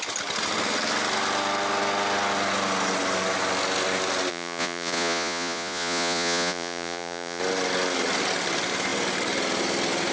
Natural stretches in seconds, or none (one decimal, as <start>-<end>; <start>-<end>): 0.0-4.3; 7.4-10.1